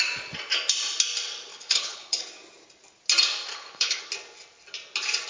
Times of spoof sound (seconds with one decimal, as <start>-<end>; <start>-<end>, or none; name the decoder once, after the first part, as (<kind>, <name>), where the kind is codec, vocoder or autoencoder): 1.5-2.2 (codec, HILCodec); 3.5-4.0